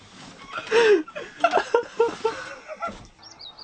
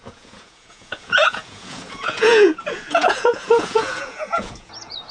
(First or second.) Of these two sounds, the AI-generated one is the second